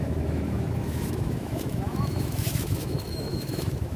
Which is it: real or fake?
fake